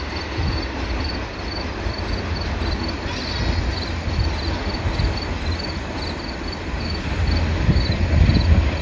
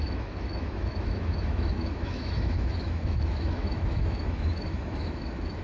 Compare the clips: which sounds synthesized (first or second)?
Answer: second